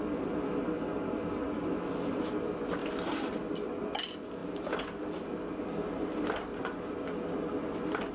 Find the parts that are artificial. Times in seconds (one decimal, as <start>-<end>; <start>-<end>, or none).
2.8-3.4